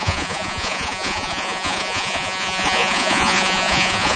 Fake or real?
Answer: fake